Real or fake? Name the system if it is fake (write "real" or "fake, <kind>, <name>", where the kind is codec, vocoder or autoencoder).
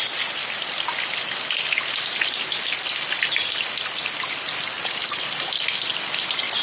real